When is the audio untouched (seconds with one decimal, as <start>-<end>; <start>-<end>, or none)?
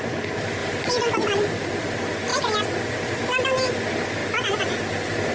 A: 0.0-5.3